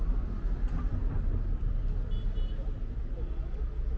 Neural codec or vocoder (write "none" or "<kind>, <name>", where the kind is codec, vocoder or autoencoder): none